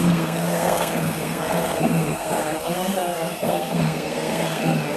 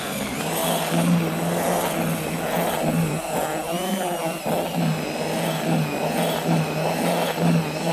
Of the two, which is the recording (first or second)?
second